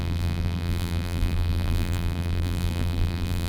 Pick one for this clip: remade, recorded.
remade